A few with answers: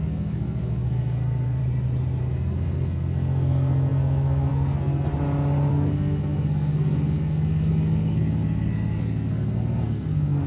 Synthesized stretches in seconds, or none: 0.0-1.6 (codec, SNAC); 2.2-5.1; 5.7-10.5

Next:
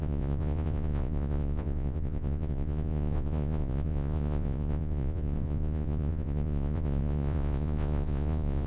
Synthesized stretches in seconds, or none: 0.0-8.7 (vocoder, Vocos)

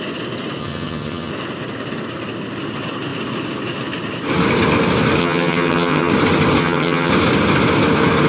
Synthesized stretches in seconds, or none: 0.6-1.3 (vocoder, HiFi-GAN); 5.2-6.1; 6.6-7.1

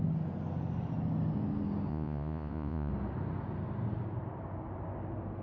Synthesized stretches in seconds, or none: 1.9-2.9 (vocoder, Vocos)

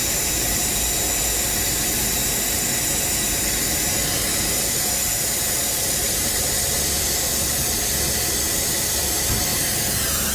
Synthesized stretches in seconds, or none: 0.0-0.7 (vocoder, BigVGAN v2); 9.5-10.3